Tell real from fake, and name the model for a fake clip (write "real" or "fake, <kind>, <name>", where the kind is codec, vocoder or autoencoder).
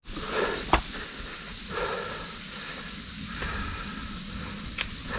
real